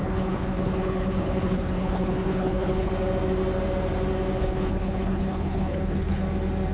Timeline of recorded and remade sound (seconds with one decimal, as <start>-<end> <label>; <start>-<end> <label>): 0.0-2.9 remade; 2.9-4.4 recorded; 4.4-6.2 remade; 6.2-6.7 recorded